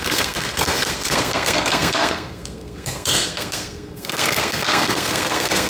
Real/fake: fake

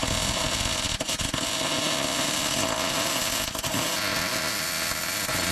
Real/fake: real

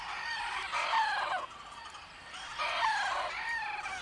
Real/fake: real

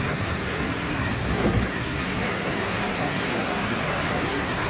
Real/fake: fake